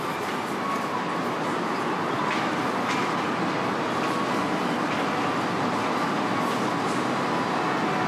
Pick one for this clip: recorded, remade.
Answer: recorded